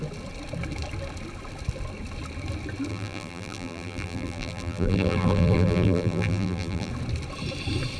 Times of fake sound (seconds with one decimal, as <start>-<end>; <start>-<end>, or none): 2.9-6.9